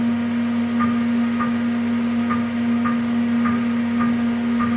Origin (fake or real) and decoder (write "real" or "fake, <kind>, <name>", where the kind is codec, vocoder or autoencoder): real